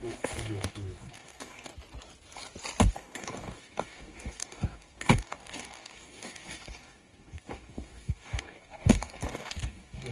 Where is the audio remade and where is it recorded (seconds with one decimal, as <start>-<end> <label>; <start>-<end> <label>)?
0.0-1.7 remade; 1.7-2.9 recorded; 2.9-10.1 remade